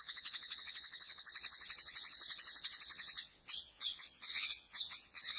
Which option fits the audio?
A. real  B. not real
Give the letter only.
B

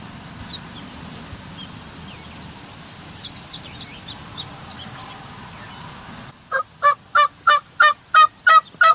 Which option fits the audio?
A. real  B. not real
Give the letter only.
A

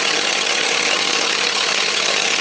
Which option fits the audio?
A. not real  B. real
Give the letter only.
A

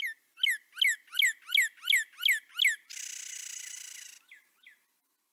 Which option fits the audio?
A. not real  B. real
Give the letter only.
B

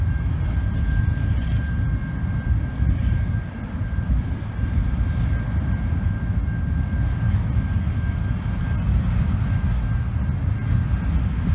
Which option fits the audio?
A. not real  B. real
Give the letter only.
B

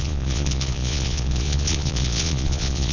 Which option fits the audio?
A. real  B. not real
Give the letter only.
B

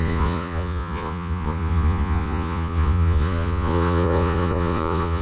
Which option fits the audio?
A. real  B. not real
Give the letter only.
B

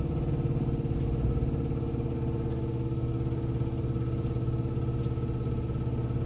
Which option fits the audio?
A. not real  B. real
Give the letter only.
B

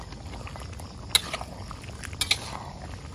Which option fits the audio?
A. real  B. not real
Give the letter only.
A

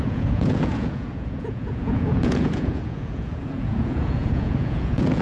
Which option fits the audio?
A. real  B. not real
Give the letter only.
B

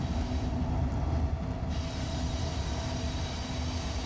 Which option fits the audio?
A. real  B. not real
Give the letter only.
A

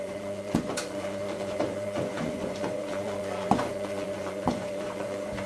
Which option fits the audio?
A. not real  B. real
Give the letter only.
A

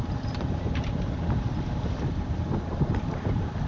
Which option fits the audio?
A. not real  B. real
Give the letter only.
B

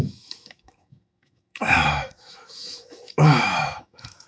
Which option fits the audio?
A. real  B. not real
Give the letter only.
B